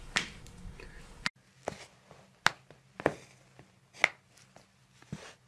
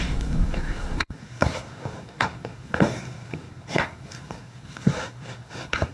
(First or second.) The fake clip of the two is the second